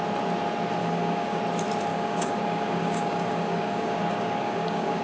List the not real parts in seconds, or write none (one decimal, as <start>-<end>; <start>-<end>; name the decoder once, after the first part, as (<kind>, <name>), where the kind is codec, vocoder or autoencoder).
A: 0.8-1.4 (codec, DAC); 1.9-5.0